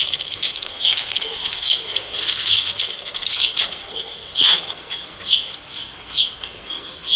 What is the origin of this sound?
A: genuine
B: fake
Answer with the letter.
B